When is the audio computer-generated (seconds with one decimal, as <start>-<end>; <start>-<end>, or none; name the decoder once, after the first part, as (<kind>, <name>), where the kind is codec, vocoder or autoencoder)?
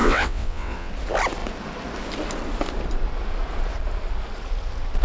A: 0.0-0.9 (vocoder, WaveNeXt)